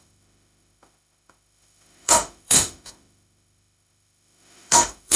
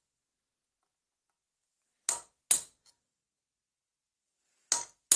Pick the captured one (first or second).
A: second